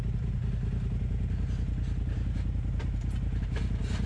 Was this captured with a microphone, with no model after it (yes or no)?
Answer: yes